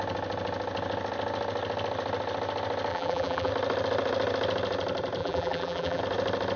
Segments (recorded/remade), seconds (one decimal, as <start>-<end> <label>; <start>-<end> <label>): 0.0-2.9 recorded; 2.9-3.5 remade; 3.5-5.2 recorded; 5.2-6.0 remade; 6.0-6.6 recorded